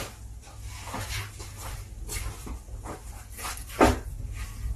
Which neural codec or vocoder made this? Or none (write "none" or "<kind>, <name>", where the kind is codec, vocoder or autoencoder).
none